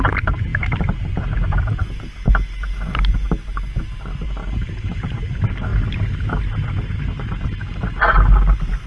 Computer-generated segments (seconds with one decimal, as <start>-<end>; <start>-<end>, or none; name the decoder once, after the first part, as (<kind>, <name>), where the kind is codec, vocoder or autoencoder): none